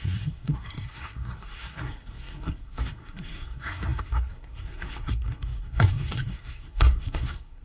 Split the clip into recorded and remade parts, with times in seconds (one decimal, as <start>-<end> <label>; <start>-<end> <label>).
0.0-7.6 remade